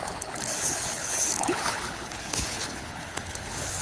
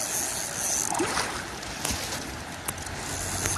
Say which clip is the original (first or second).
second